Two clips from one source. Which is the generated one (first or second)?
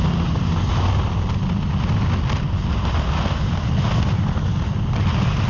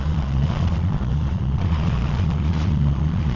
second